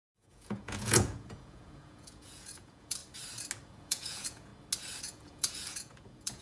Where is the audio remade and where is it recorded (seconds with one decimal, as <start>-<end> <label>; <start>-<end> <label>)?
0.0-3.0 remade; 3.0-3.7 recorded; 3.7-4.5 remade; 4.5-5.0 recorded; 5.0-6.4 remade